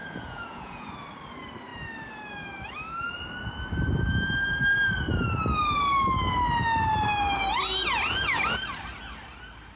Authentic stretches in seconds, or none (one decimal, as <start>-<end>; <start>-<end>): 0.9-9.8